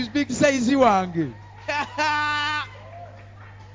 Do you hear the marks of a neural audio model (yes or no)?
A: no